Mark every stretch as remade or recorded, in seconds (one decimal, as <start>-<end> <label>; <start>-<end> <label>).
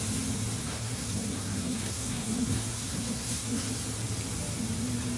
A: 0.0-0.6 recorded; 0.6-3.7 remade; 3.7-5.2 recorded